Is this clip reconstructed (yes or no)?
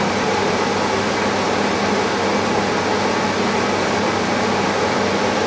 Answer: no